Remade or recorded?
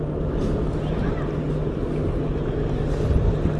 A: recorded